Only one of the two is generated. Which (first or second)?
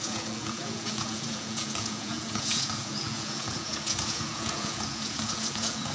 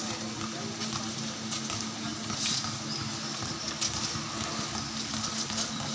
first